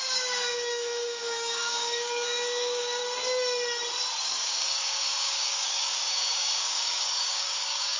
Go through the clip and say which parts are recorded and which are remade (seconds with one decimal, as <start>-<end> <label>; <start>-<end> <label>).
0.0-3.0 remade; 3.0-4.2 recorded; 4.2-8.0 remade